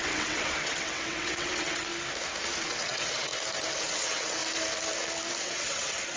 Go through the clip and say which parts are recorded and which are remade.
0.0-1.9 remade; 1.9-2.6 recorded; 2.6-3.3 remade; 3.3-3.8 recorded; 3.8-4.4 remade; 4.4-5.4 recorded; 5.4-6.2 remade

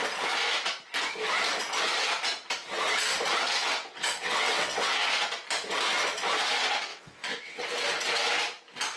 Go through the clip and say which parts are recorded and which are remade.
0.0-3.6 recorded; 3.6-5.1 remade; 5.1-6.9 recorded; 6.9-7.6 remade; 7.6-9.0 recorded

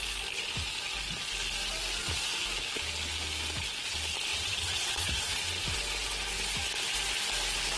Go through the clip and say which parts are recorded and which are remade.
0.0-4.3 recorded; 4.3-5.4 remade; 5.4-7.8 recorded

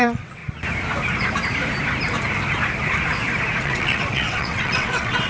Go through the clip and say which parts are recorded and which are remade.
0.0-0.4 remade; 0.4-3.6 recorded; 3.6-5.3 remade

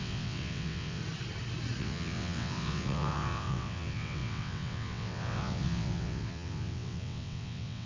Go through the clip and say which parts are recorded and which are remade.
0.0-1.0 remade; 1.0-1.8 recorded; 1.8-7.9 remade

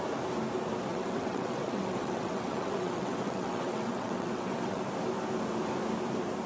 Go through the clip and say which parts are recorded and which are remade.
0.0-0.9 recorded; 0.9-4.8 remade; 4.8-6.5 recorded

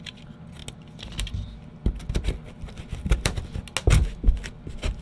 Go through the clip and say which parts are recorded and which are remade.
0.0-5.0 recorded

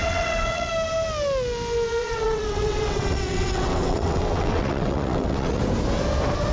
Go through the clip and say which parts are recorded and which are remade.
0.0-0.7 remade; 0.7-2.0 recorded; 2.0-5.6 remade; 5.6-6.5 recorded